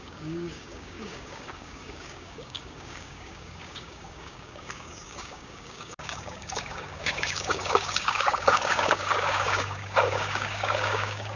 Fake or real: fake